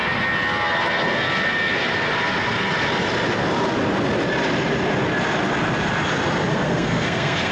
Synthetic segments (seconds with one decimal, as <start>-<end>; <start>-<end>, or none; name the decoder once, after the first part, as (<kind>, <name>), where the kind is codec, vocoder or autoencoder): 6.5-7.5 (codec, SNAC)